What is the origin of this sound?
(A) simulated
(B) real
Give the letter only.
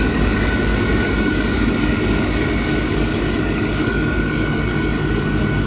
A